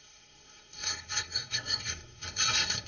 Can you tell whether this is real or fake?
fake